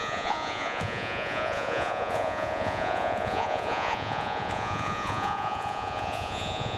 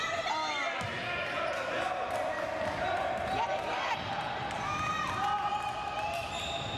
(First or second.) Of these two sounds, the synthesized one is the first